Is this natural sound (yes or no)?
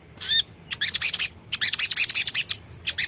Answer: yes